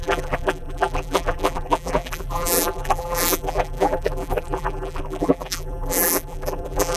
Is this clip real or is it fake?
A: fake